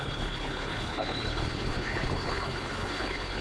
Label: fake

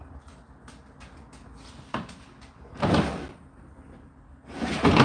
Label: real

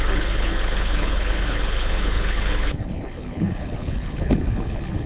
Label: fake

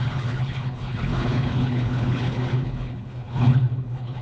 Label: fake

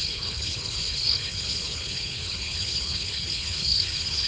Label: fake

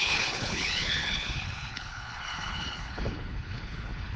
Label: fake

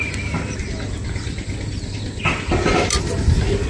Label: real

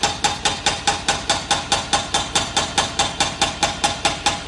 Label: real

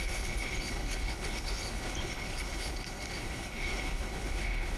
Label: fake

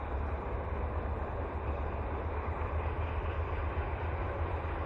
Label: real